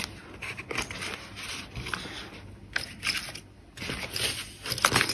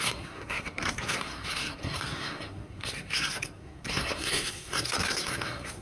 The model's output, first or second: second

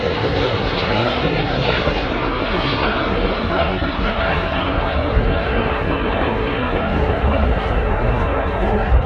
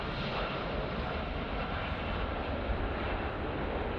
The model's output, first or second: first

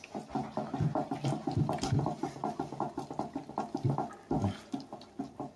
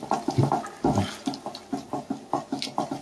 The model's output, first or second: first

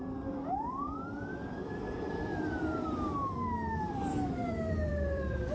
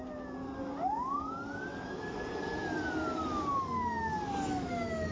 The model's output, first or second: first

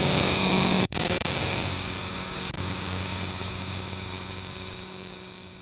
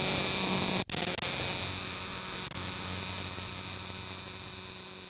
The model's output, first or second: first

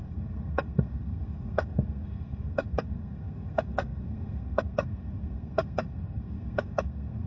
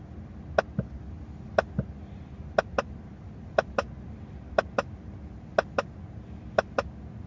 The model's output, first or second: first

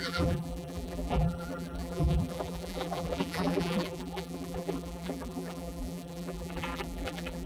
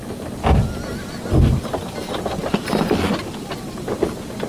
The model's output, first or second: first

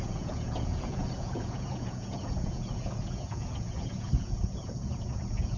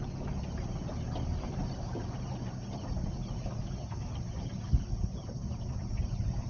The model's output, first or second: first